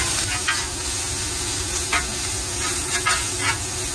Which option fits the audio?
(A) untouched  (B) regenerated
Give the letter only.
A